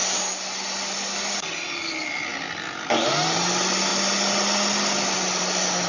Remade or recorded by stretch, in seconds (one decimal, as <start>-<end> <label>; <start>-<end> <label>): 0.0-5.9 recorded